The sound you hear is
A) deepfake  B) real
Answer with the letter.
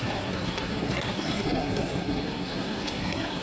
A